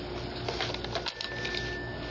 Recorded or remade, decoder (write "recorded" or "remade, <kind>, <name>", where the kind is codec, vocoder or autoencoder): recorded